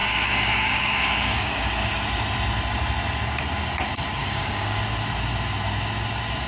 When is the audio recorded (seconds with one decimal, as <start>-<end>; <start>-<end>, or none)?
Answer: 1.6-4.2; 4.8-6.5